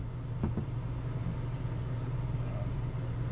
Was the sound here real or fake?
real